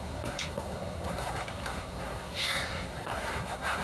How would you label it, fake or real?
fake